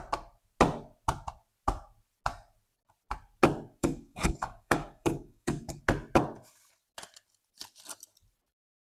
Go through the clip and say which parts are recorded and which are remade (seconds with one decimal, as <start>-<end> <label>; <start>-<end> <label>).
0.0-3.8 recorded; 3.8-5.8 remade; 5.8-8.9 recorded